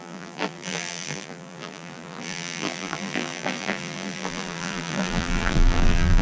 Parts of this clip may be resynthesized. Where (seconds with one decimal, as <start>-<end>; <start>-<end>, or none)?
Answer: 0.0-6.2